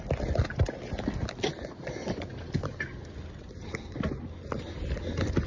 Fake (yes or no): no